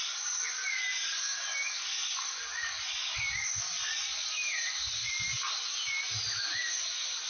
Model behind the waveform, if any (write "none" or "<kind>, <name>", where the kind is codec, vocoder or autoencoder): none